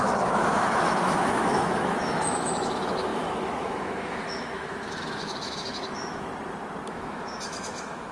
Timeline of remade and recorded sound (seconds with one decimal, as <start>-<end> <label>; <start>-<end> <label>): 0.0-6.3 remade; 6.3-6.9 recorded; 6.9-8.1 remade